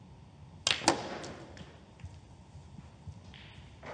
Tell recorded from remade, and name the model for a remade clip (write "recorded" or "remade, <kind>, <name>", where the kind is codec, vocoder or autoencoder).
recorded